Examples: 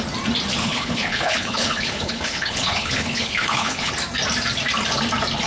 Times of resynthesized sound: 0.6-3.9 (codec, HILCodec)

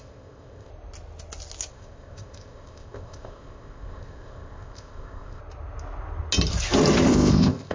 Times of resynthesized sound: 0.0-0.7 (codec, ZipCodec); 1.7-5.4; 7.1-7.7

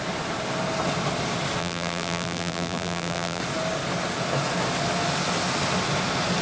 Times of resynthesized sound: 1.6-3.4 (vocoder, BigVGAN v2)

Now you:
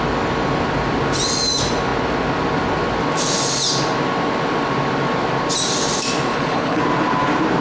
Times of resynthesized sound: 6.3-6.8 (codec, HILCodec)

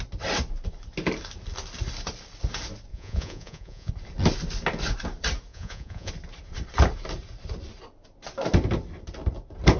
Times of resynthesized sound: 2.9-3.9 (vocoder, Vocos); 5.5-6.1

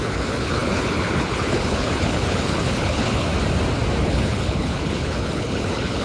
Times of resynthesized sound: 0.0-3.3 (codec, HILCodec); 4.0-6.0

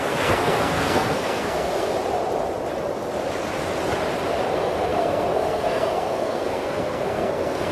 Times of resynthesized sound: 0.0-1.9 (codec, SNAC); 4.5-7.7

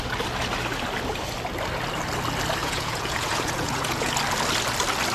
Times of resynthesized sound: 2.6-4.1 (vocoder, Vocos)